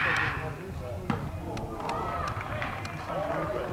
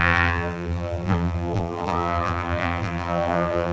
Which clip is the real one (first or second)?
first